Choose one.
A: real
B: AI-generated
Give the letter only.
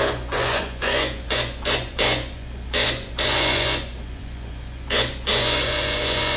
B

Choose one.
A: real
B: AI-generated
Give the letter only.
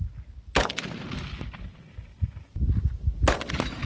A